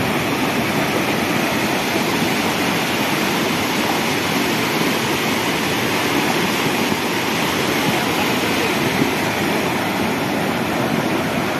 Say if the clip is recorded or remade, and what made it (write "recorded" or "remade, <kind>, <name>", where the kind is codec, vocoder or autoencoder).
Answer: recorded